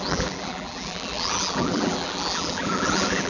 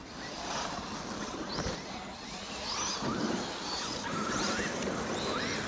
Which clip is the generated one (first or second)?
first